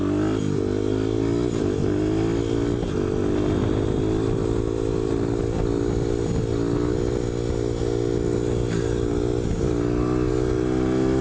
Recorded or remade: recorded